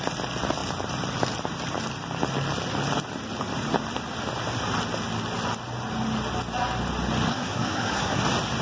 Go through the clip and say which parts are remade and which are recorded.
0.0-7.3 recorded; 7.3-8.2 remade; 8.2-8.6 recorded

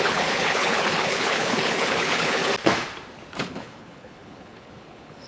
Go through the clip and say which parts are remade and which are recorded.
0.0-2.4 remade; 2.4-3.4 recorded; 3.4-5.3 remade